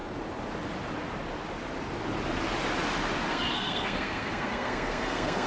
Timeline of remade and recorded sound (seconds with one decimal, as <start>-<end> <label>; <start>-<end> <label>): 0.0-3.3 recorded; 3.3-5.5 remade